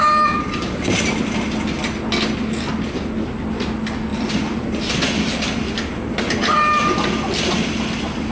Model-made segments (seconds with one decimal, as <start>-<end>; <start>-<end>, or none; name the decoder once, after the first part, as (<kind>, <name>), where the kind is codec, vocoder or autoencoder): none